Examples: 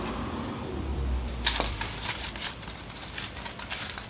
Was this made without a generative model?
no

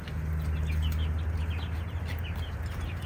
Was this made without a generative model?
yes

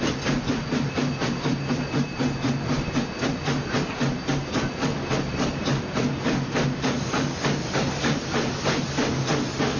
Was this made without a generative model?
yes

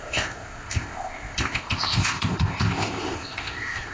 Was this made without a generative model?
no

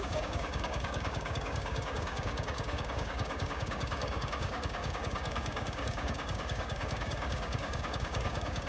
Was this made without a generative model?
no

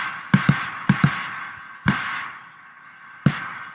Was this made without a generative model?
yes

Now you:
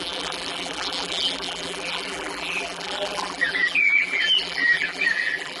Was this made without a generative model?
no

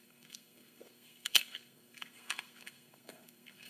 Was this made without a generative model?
no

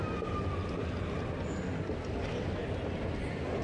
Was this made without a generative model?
yes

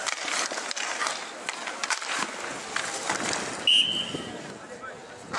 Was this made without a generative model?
yes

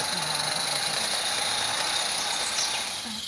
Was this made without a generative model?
yes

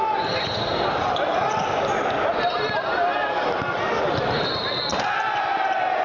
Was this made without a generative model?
yes